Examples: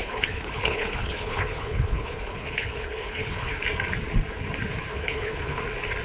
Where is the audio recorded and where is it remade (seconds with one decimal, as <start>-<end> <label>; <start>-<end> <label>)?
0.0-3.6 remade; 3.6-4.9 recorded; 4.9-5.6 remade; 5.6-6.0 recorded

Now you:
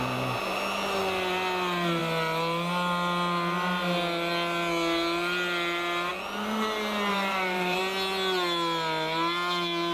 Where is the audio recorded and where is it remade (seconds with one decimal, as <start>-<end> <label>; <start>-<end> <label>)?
0.0-7.1 recorded; 7.1-7.8 remade; 7.8-9.9 recorded

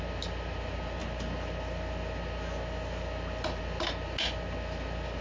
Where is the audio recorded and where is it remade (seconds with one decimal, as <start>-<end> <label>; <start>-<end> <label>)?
0.0-5.2 recorded

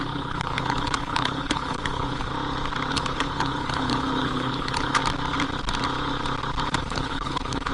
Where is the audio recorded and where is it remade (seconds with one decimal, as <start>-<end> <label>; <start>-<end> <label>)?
0.0-2.3 remade; 2.3-2.9 recorded; 2.9-5.0 remade; 5.0-6.8 recorded; 6.8-7.7 remade